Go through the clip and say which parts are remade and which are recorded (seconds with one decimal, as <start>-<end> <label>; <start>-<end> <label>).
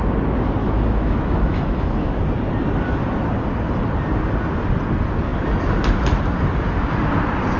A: 0.0-0.6 recorded; 0.6-2.2 remade; 2.2-7.6 recorded